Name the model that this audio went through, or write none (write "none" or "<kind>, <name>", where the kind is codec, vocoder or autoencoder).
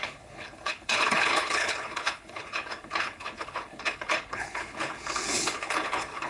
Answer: codec, HILCodec